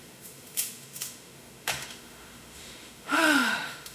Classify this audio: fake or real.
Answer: fake